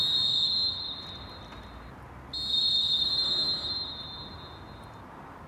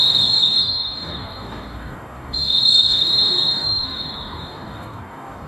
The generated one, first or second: second